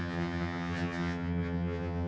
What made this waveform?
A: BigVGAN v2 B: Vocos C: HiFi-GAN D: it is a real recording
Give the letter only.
C